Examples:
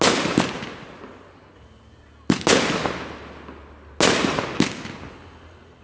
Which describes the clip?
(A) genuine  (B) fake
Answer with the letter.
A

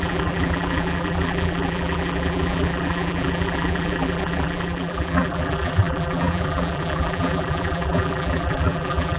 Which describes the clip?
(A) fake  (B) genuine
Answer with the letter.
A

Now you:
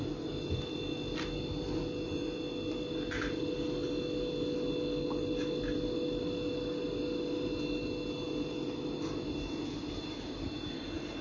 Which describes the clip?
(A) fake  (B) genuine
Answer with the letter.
B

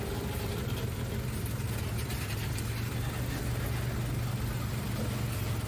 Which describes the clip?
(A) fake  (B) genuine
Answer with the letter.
B